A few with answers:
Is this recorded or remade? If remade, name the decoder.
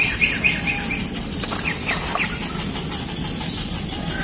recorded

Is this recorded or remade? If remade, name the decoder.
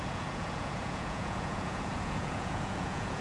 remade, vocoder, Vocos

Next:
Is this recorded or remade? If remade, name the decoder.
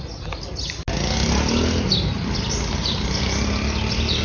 recorded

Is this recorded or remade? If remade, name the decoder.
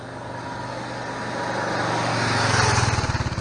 recorded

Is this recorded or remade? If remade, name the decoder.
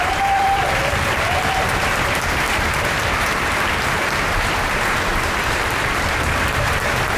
remade, vocoder, BigVGAN v2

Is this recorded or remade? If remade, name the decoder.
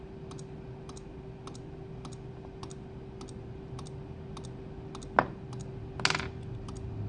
recorded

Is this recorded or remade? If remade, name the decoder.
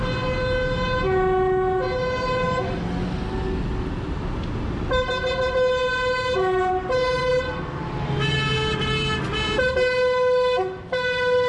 recorded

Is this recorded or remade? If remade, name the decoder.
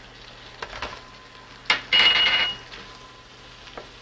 recorded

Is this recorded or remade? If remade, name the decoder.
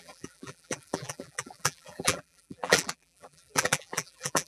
remade, vocoder, BigVGAN v2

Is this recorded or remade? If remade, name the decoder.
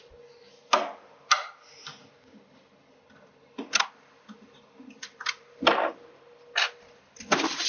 recorded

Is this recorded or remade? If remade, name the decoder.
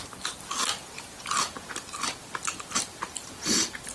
recorded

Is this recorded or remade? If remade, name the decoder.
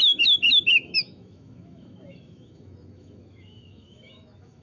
remade, autoencoder, DAC-VAE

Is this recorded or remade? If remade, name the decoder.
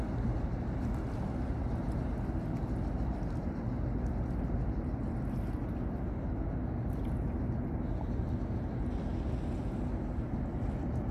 recorded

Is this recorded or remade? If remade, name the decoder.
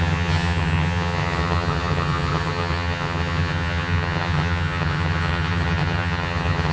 remade, vocoder, HiFi-GAN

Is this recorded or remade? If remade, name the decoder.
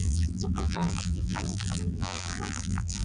remade, vocoder, BigVGAN v2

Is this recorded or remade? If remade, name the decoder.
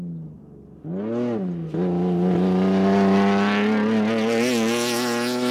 recorded